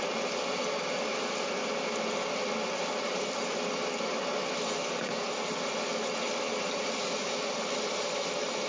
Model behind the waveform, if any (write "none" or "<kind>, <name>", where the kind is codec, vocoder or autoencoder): none